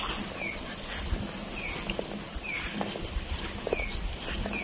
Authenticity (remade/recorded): recorded